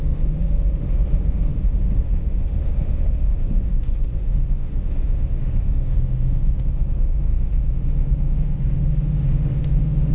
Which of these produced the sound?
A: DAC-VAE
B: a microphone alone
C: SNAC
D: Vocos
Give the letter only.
A